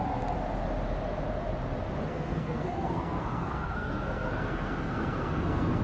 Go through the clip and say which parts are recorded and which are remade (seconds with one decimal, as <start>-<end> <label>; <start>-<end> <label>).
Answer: 0.0-2.0 recorded; 2.0-5.8 remade